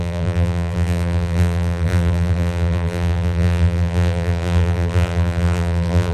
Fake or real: fake